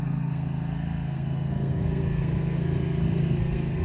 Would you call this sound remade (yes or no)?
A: yes